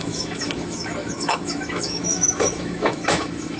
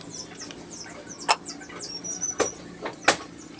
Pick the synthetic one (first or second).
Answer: first